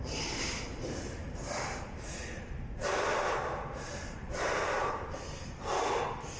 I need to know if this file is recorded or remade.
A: recorded